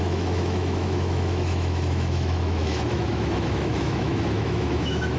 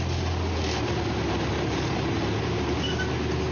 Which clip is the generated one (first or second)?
first